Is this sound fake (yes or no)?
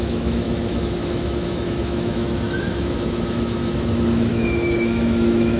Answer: yes